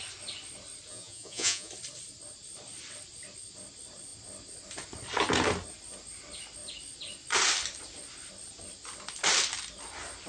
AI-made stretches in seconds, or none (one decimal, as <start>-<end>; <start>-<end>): 0.9-1.7